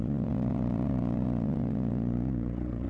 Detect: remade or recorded remade